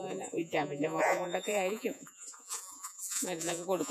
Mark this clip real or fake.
fake